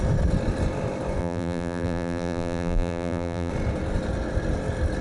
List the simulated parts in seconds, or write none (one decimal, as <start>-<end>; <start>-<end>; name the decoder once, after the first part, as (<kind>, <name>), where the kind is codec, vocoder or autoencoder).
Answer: 1.2-3.5 (vocoder, BigVGAN v2)